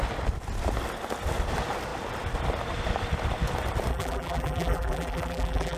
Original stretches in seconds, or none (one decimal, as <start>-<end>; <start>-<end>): 0.0-3.9